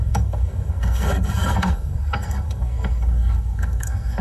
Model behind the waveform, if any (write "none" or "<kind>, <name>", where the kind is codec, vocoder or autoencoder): codec, SNAC